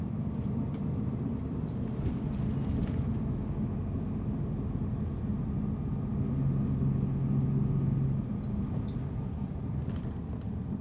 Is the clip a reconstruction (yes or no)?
no